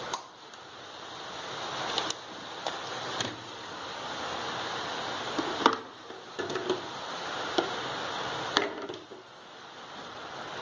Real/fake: real